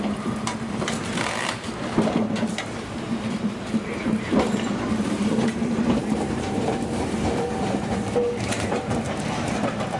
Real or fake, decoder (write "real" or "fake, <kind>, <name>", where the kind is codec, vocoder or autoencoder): fake, vocoder, BigVGAN v2